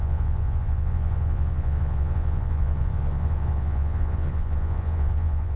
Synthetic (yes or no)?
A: yes